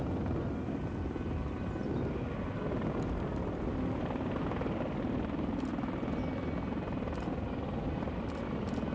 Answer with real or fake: real